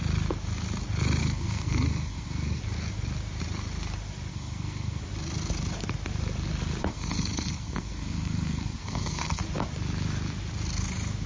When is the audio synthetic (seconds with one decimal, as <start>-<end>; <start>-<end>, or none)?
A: 1.2-2.6; 4.3-5.0; 6.8-9.4